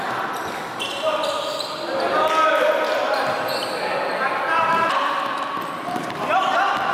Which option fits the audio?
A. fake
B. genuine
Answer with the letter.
B